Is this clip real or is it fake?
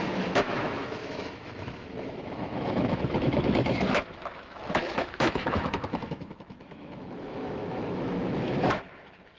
fake